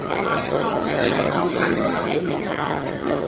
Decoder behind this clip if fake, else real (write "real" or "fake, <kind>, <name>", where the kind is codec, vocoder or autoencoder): fake, vocoder, HiFi-GAN